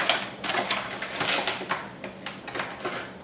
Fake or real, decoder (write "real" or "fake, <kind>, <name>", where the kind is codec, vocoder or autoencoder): real